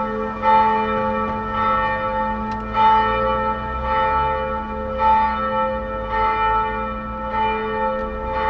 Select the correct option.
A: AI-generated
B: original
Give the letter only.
B